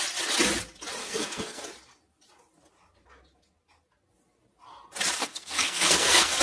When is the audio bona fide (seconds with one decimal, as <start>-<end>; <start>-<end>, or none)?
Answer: 0.0-1.0; 1.6-5.2